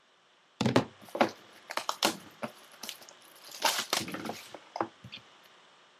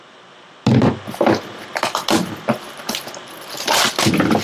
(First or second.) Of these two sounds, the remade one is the first